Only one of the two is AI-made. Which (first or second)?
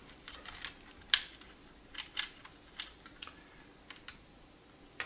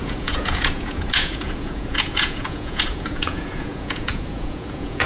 second